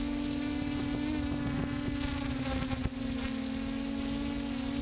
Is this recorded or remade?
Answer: recorded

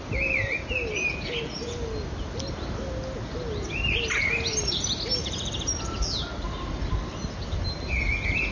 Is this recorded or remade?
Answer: recorded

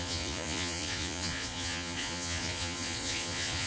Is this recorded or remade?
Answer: remade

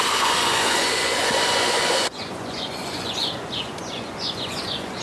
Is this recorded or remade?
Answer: remade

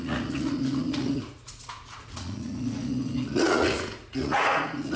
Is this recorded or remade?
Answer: remade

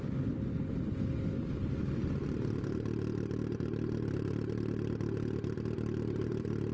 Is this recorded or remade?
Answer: recorded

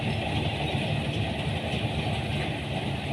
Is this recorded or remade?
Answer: recorded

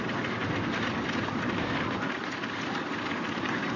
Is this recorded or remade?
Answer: recorded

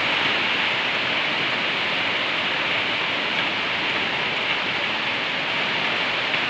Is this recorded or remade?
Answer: recorded